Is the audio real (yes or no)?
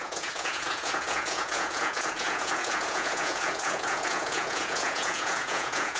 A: no